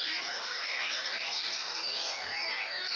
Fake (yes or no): yes